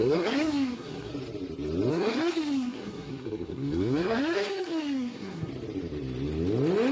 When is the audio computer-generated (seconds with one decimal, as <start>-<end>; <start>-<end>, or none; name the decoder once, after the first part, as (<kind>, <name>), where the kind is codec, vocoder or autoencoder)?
0.0-1.1 (codec, SNAC); 1.9-5.5